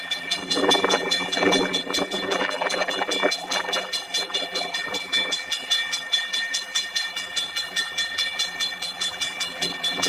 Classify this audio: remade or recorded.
remade